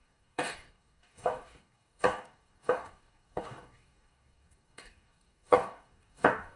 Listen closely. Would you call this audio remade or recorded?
remade